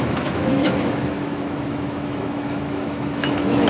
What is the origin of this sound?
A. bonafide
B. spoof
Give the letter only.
B